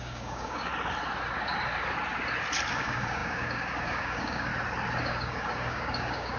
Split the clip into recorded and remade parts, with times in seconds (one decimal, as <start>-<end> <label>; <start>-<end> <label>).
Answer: 0.0-0.7 remade; 0.7-2.7 recorded; 2.7-4.5 remade; 4.5-5.0 recorded; 5.0-6.4 remade